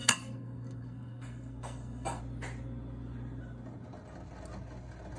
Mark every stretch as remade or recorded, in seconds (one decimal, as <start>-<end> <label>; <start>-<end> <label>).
0.0-2.2 remade; 2.2-5.2 recorded

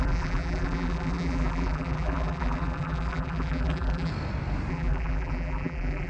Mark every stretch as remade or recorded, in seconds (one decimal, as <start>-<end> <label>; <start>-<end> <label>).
0.0-4.1 remade; 4.1-4.7 recorded; 4.7-6.1 remade

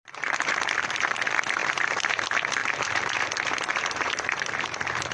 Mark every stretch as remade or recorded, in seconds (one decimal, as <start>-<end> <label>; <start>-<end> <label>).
0.0-1.1 remade; 1.1-1.6 recorded; 1.6-2.2 remade; 2.2-2.6 recorded; 2.6-3.1 remade; 3.1-3.7 recorded; 3.7-5.1 remade

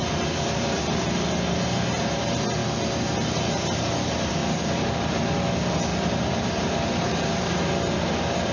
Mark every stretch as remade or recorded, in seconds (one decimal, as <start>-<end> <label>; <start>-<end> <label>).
0.0-4.4 recorded; 4.4-5.2 remade; 5.2-5.9 recorded; 5.9-7.6 remade; 7.6-8.5 recorded

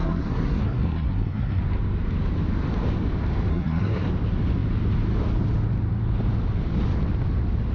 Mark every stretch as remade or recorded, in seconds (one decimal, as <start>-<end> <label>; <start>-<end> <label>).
0.0-1.6 remade; 1.6-3.5 recorded; 3.5-4.1 remade; 4.1-7.7 recorded

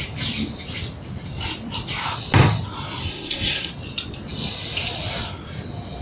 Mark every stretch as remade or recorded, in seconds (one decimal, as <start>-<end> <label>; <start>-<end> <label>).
0.0-3.0 recorded; 3.0-3.7 remade; 3.7-6.0 recorded